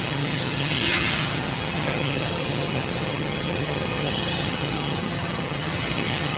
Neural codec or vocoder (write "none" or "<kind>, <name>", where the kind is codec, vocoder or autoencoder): vocoder, HiFi-GAN